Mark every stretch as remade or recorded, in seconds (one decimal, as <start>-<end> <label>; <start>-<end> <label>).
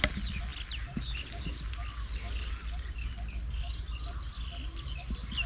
0.0-5.5 recorded